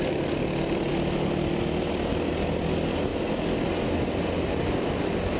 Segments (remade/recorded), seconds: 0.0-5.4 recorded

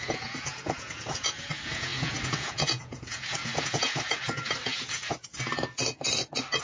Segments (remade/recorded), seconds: 0.0-5.3 remade; 5.3-6.6 recorded

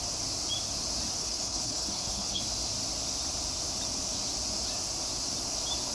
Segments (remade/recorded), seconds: 0.0-1.2 recorded; 1.2-2.4 remade; 2.4-5.9 recorded

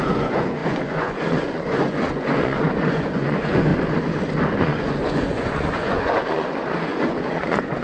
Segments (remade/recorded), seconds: 0.0-3.7 remade; 3.7-4.6 recorded; 4.6-7.8 remade